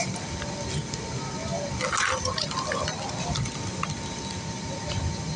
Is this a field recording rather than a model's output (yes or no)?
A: yes